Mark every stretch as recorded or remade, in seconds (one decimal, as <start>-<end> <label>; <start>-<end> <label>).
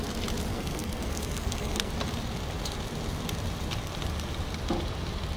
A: 0.0-0.5 recorded; 0.5-1.9 remade; 1.9-5.4 recorded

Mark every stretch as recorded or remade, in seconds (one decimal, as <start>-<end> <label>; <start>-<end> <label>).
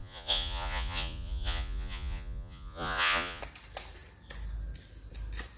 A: 0.0-3.4 remade; 3.4-5.6 recorded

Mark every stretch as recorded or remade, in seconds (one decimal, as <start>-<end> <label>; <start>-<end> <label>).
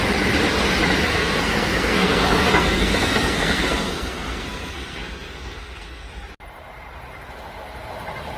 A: 0.0-1.1 recorded; 1.1-6.1 remade; 6.1-8.4 recorded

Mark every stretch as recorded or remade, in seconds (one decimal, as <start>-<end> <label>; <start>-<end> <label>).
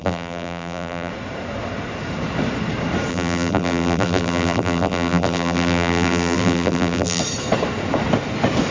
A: 0.0-1.1 remade; 1.1-3.1 recorded; 3.1-7.2 remade; 7.2-8.7 recorded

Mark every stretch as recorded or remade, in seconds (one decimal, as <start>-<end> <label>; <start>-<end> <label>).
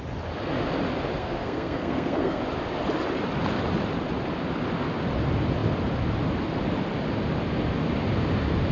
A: 0.0-1.2 recorded; 1.2-2.4 remade; 2.4-8.7 recorded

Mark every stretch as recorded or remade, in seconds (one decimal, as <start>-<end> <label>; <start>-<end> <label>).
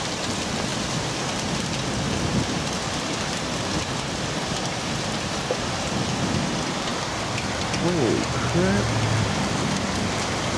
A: 0.0-10.6 recorded